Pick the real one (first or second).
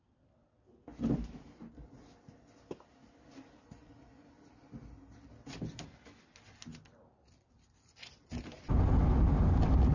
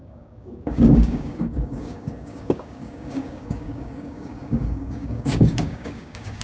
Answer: first